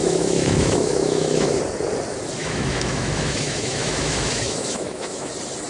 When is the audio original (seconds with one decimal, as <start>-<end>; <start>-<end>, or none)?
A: 1.6-2.4; 5.3-5.7